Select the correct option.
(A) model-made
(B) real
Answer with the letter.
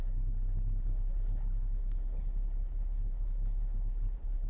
A